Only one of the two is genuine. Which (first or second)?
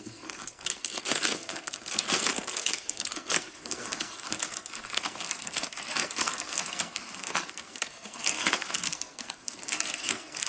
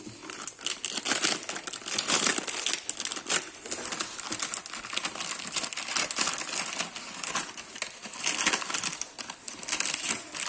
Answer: second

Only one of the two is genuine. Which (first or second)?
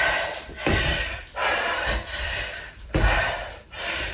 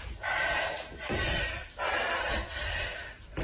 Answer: first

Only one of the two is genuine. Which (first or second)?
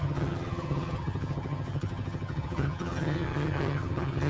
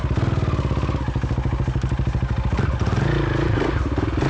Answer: second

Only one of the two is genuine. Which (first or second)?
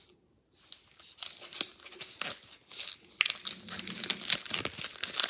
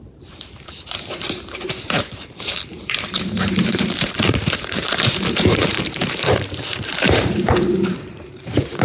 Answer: first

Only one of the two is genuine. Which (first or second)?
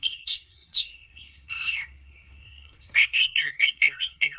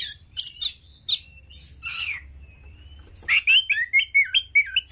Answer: second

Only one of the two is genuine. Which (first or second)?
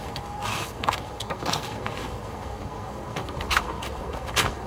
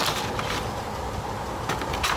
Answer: second